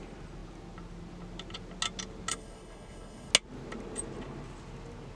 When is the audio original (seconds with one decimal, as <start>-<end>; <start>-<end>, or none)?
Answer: 0.0-2.3; 3.3-5.2